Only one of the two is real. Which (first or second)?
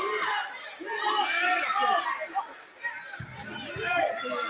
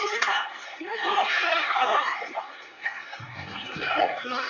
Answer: first